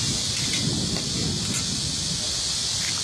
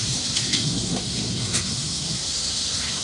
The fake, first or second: second